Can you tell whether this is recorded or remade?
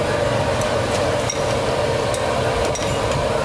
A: recorded